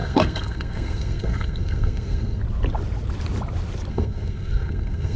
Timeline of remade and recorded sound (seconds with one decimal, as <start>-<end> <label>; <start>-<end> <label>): 0.0-2.4 remade; 2.4-3.9 recorded; 3.9-5.2 remade